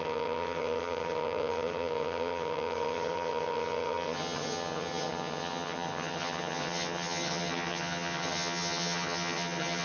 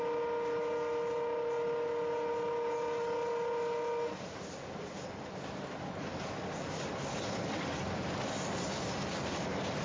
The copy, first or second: first